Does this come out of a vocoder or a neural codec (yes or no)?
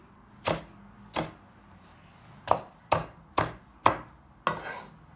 no